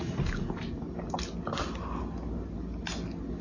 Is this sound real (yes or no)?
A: yes